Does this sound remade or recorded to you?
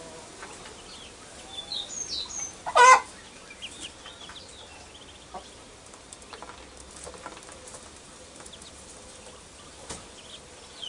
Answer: recorded